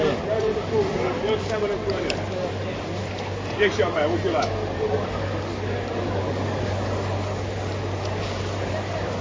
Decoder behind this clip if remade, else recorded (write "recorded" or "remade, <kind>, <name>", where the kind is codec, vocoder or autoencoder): recorded